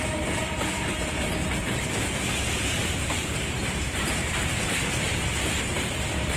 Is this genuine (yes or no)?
no